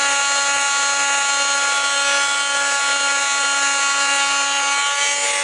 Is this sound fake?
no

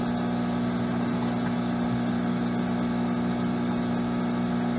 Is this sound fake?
no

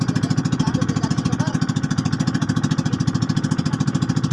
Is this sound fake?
no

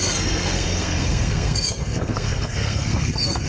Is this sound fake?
yes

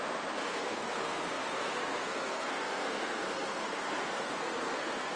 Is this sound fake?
yes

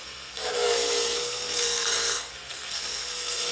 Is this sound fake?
yes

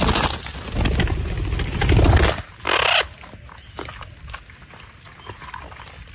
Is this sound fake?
no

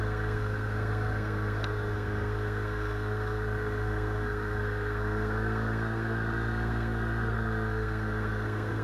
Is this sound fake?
yes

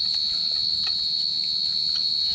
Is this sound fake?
no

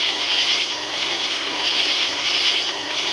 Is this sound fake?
yes